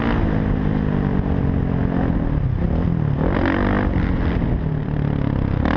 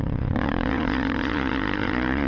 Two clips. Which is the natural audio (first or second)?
first